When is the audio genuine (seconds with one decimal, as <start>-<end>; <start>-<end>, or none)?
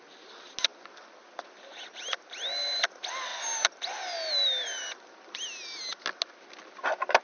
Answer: 0.0-7.2